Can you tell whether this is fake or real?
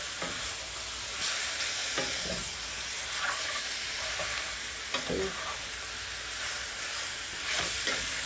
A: real